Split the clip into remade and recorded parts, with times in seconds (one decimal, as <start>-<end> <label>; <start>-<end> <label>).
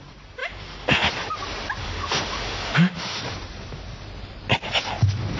0.0-0.4 recorded; 0.4-1.1 remade; 1.1-1.8 recorded; 1.8-3.2 remade; 3.2-5.4 recorded